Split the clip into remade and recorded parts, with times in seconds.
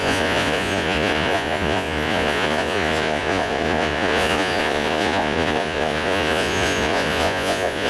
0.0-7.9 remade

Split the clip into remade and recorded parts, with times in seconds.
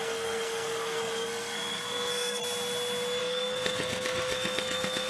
0.0-2.4 remade; 2.4-3.2 recorded; 3.2-5.1 remade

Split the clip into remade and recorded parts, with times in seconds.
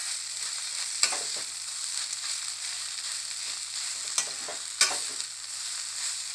0.0-3.0 remade; 3.0-6.3 recorded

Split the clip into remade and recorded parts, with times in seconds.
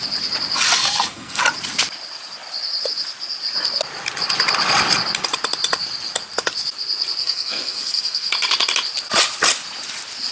0.0-0.8 recorded; 0.8-1.4 remade; 1.4-7.2 recorded; 7.2-8.3 remade; 8.3-10.3 recorded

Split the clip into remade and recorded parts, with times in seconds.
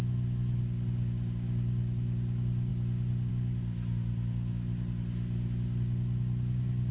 0.0-6.9 recorded